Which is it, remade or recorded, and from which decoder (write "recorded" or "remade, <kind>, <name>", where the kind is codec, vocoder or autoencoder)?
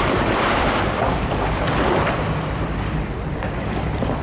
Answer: remade, vocoder, BigVGAN v2